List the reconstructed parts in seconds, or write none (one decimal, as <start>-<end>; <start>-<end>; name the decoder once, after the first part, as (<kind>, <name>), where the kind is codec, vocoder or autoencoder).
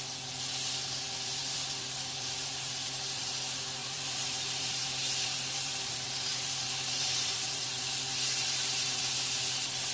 1.0-3.2 (vocoder, BigVGAN v2); 3.8-9.0